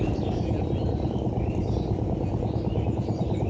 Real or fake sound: real